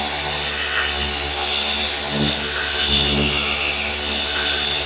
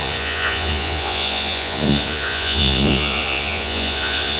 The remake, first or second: second